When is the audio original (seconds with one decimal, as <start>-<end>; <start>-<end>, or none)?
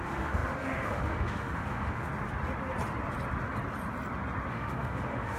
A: 2.1-4.5